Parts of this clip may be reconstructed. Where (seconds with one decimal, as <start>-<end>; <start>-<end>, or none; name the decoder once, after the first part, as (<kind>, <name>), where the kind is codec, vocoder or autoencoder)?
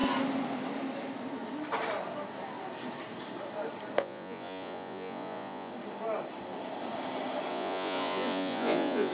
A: 4.0-5.7 (vocoder, Vocos); 7.5-9.1